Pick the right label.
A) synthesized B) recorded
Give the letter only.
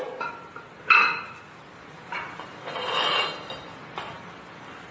B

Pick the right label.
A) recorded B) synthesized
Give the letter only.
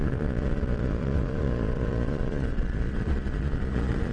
B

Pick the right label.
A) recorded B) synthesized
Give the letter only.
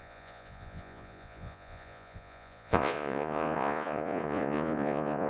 B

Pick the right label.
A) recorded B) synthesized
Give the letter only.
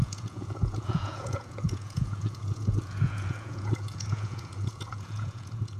B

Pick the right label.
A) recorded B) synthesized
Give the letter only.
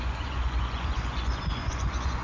B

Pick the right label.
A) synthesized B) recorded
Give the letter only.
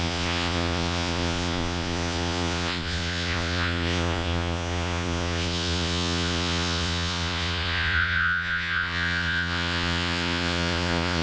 A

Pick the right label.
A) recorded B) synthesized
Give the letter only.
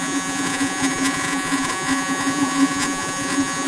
B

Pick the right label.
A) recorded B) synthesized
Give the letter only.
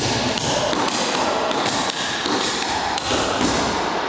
A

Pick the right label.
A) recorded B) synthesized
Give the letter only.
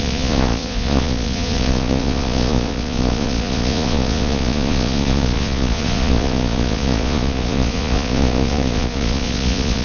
B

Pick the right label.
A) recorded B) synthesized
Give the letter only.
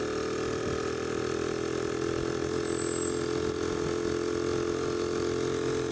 A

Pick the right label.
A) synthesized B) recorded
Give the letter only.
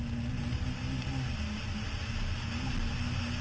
B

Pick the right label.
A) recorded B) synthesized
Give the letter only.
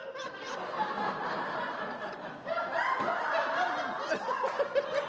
A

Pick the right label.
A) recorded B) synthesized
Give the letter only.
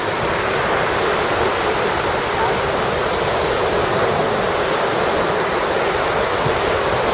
A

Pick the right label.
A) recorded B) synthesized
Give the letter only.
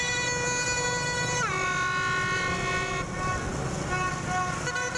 A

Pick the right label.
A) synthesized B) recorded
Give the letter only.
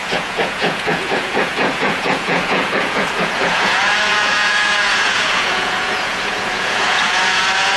A